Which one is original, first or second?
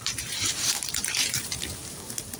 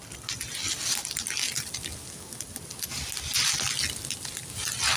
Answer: second